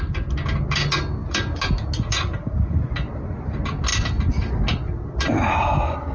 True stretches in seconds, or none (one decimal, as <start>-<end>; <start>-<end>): 0.0-6.1